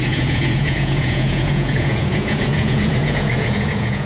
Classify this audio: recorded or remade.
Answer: remade